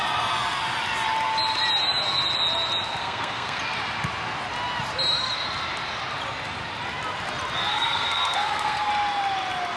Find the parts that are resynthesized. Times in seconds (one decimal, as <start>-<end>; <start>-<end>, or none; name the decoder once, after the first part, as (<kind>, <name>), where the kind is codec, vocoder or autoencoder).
3.0-3.6 (codec, SNAC); 7.7-8.9